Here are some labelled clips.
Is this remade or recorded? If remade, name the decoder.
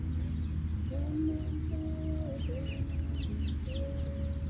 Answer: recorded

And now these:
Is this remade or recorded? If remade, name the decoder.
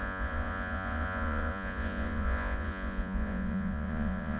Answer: remade, vocoder, Vocos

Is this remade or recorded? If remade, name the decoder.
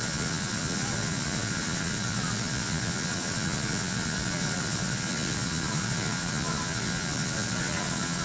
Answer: remade, vocoder, Vocos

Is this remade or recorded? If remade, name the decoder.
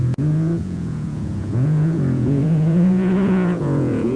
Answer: remade, vocoder, Vocos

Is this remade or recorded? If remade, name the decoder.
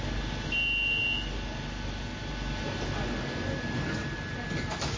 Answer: recorded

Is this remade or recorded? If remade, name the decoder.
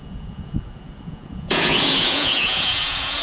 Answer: remade, vocoder, Vocos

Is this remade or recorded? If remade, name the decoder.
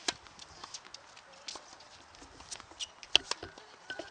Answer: recorded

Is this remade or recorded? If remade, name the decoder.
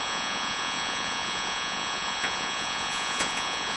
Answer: remade, vocoder, Vocos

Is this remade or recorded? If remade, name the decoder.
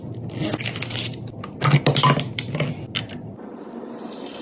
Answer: recorded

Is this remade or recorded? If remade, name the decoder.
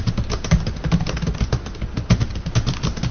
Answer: recorded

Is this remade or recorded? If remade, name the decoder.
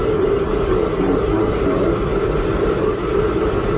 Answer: recorded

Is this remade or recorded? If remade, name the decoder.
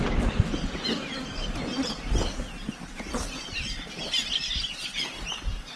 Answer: recorded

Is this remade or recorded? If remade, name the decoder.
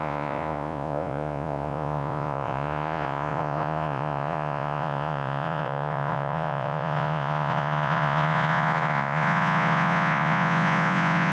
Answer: remade, vocoder, Vocos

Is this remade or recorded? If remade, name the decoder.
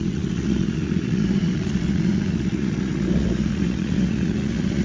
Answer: remade, vocoder, Vocos